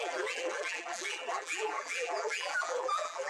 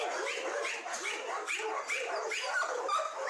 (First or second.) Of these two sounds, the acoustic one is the second